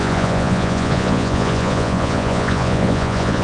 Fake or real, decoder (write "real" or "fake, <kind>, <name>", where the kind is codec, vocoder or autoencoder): fake, vocoder, Vocos